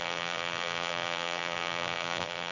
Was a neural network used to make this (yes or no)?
yes